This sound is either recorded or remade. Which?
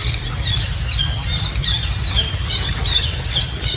remade